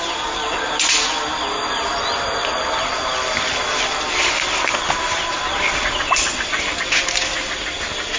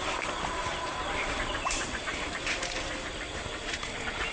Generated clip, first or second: second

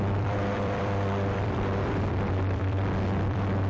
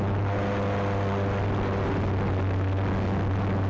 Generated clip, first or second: first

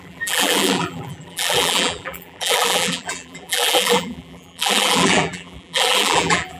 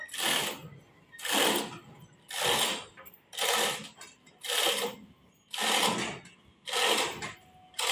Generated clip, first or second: first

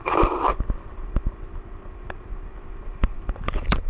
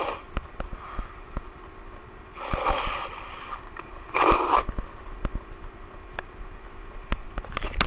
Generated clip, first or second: first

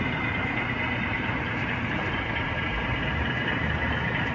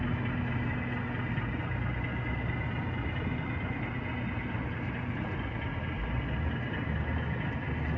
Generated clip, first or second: first